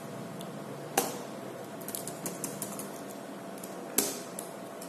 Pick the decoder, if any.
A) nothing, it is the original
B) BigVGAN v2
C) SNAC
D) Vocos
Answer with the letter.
A